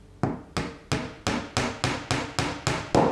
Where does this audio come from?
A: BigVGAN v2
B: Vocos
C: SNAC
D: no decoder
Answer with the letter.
D